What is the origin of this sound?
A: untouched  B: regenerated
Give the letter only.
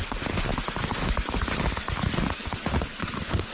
A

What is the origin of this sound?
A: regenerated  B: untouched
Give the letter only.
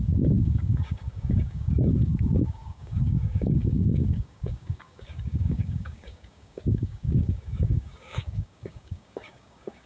A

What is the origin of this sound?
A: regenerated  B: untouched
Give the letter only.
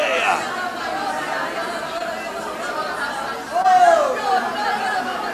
B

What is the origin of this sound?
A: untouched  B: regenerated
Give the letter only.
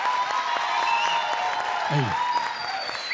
A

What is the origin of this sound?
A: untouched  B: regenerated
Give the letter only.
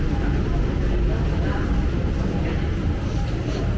A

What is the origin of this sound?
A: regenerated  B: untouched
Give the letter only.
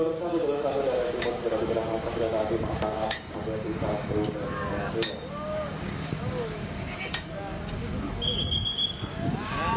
A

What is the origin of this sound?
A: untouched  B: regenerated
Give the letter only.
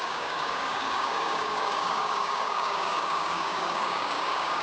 B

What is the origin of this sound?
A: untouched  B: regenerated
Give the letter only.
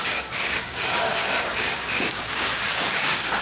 B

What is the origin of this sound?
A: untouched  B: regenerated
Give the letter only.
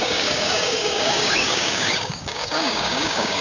B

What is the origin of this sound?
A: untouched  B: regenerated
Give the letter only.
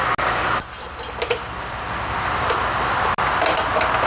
A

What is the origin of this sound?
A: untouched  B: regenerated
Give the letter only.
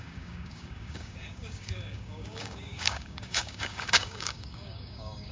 B